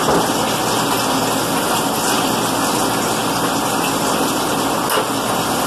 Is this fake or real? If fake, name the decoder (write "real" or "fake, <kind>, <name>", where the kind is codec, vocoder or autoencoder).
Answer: real